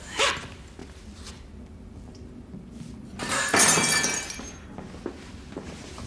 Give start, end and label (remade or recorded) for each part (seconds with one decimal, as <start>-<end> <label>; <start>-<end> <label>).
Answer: 0.0-6.1 recorded